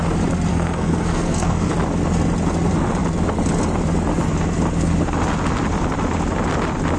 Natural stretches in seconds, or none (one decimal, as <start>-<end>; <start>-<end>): 0.0-0.5; 1.7-7.0